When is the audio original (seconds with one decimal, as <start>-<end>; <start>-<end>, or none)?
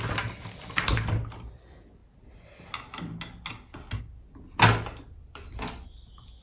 0.0-6.4